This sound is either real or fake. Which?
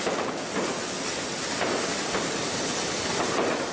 real